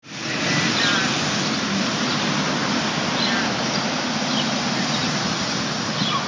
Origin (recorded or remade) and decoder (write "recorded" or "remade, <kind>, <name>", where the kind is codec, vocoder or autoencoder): recorded